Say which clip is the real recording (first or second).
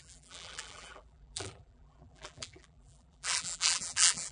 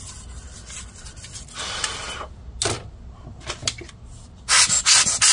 second